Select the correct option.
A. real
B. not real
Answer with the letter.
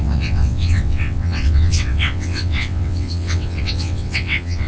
B